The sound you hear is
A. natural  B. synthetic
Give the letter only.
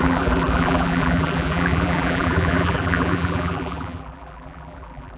B